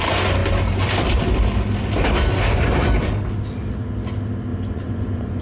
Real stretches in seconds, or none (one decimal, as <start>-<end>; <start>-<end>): 0.0-4.5